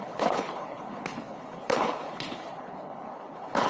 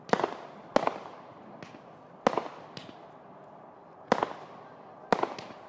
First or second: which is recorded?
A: second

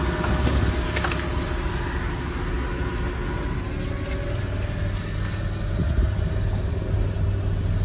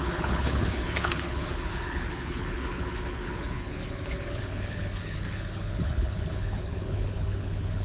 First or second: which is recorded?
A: first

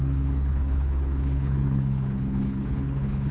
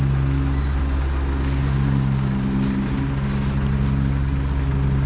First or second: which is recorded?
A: second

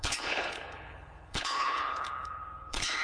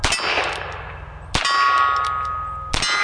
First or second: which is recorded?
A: second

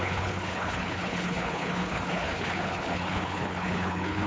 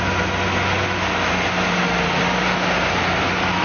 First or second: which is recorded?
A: second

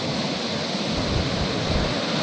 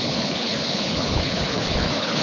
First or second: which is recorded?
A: first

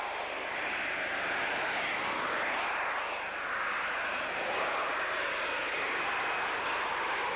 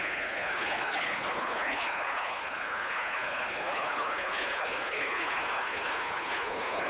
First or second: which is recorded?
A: first